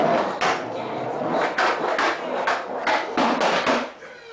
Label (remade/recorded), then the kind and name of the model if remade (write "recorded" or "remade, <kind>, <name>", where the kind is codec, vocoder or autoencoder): recorded